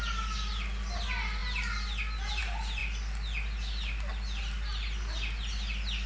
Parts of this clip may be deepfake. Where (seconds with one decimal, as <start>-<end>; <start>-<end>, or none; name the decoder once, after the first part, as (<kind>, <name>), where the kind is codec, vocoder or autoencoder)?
none